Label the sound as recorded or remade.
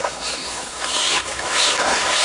remade